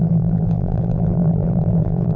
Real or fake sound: fake